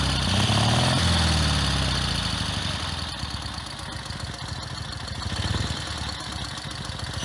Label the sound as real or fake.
real